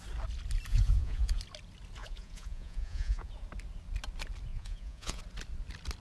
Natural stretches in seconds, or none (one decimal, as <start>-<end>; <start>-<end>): 0.0-0.7; 1.4-2.0; 3.3-4.5; 5.2-6.0